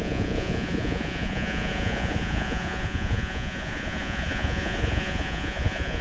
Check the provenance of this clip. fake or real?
fake